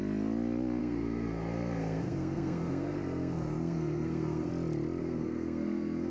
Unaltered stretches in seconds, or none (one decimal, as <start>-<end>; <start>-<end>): 0.0-0.8; 4.5-5.0